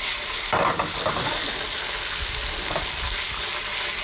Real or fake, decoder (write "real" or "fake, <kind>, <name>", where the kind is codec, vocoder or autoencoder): real